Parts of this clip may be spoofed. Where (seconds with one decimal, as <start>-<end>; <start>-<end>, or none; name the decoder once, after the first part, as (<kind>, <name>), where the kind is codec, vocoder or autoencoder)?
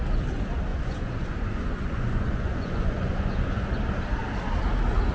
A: 0.7-3.7 (vocoder, Vocos)